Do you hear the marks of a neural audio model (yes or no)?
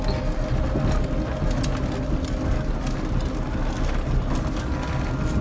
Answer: no